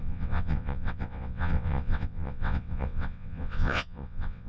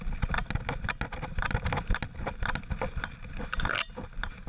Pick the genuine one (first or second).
second